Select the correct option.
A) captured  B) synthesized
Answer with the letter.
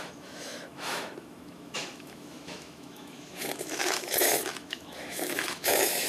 B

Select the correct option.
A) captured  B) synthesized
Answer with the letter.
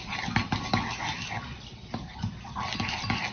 A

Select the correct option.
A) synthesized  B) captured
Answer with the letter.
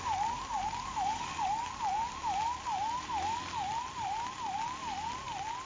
B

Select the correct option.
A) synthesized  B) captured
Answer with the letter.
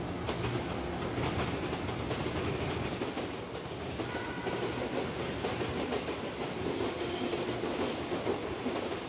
B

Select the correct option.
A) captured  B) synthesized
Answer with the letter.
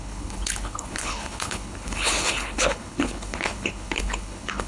B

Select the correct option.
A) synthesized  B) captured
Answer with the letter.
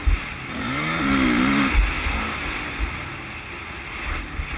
B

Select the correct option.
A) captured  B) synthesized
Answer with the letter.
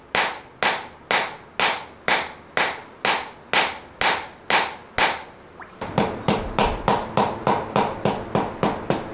A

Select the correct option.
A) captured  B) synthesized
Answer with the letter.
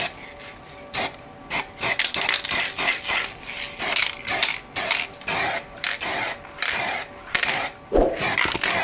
A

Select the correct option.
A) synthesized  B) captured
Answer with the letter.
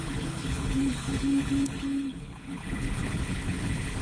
A